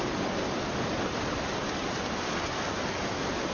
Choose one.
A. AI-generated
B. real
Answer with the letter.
B